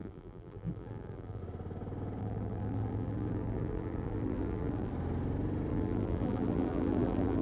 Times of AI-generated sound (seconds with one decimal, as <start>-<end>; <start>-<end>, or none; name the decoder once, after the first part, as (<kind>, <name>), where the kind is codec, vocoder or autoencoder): 0.0-1.4 (vocoder, BigVGAN v2); 2.2-4.9; 5.7-7.4